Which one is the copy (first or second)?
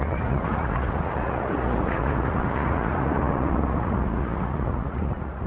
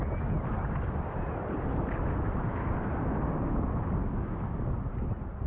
first